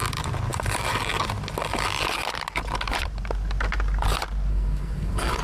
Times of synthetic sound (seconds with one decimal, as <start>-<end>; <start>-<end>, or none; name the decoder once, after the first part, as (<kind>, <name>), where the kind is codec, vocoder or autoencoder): 4.5-5.4 (codec, SNAC)